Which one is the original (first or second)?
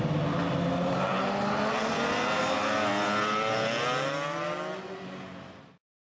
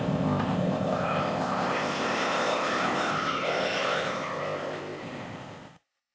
first